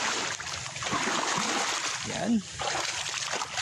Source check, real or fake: real